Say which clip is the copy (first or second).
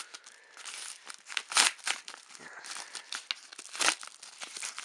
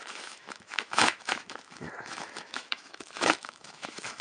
second